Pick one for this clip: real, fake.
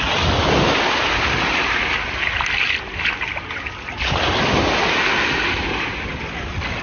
real